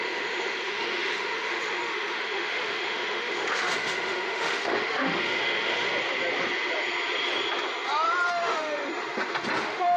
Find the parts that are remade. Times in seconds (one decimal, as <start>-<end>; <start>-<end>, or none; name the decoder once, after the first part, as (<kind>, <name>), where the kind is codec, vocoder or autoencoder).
0.0-6.0 (autoencoder, DAC-VAE); 8.3-8.8; 9.6-10.0